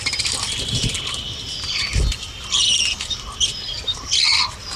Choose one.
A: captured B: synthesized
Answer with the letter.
A